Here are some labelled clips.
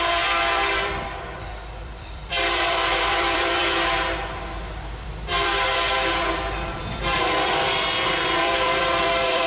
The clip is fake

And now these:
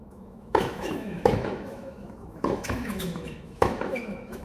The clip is fake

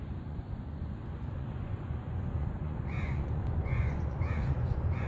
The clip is fake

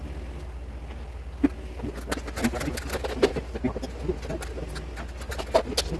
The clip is real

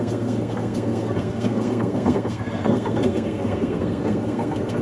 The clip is fake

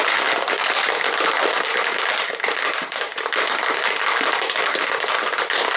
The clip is real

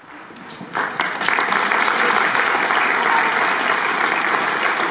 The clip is real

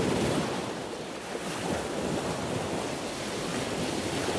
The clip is real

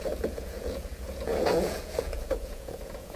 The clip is fake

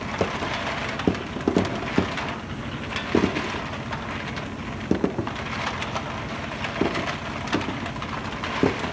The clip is real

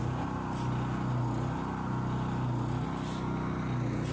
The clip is real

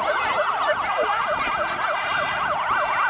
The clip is real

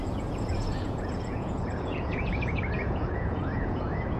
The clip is fake